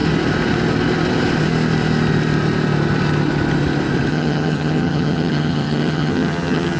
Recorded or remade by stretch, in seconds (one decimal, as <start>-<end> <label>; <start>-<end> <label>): 0.0-4.1 recorded; 4.1-6.8 remade